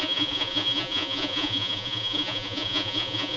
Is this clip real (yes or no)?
no